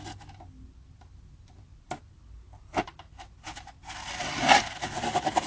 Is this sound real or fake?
real